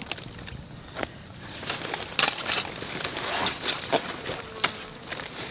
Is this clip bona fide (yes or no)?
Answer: yes